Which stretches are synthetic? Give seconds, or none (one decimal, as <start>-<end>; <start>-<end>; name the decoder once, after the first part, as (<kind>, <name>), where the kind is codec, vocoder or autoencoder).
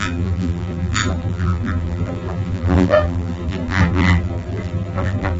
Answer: 0.0-5.4 (vocoder, BigVGAN v2)